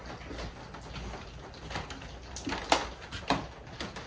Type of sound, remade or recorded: recorded